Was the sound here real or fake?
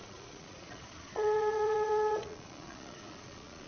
fake